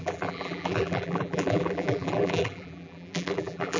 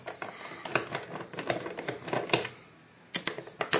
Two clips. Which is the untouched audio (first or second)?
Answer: second